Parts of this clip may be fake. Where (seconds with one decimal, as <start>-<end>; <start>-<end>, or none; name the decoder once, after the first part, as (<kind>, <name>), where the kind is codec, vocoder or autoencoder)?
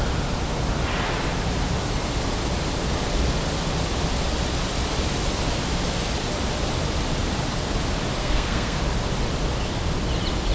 8.2-8.8 (codec, SNAC)